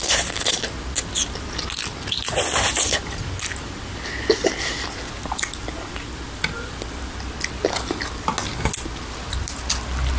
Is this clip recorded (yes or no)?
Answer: yes